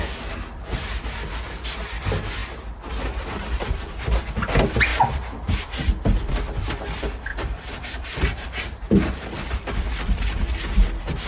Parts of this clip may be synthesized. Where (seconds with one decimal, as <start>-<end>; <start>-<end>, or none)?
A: 7.3-9.2